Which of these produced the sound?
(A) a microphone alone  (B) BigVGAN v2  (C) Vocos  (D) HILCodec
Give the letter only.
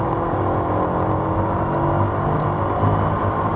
A